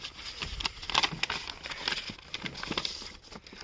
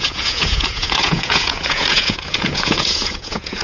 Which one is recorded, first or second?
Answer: first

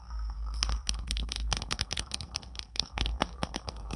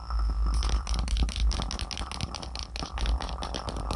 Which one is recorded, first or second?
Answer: second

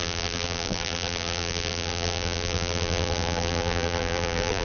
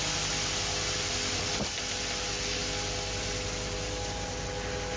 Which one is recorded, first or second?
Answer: second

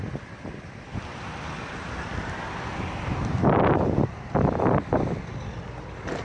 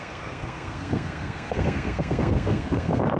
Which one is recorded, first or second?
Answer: first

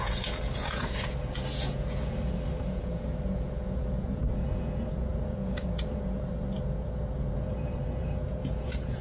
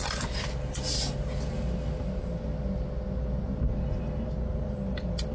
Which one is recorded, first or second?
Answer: second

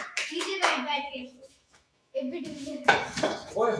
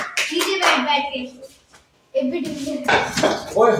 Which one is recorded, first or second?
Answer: second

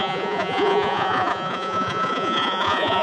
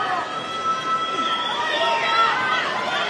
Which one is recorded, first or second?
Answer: second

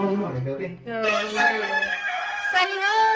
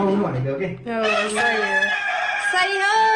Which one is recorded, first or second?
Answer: second